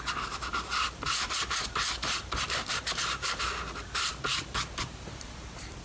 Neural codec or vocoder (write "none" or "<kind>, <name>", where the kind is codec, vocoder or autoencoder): vocoder, BigVGAN v2